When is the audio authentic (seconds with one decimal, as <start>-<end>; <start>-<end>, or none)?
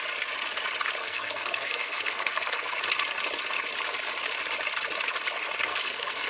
0.0-1.0; 2.8-5.7